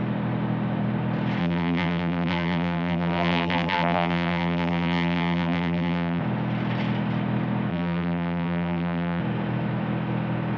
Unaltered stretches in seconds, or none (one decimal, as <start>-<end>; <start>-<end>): 0.0-1.4; 6.2-7.7; 9.2-10.6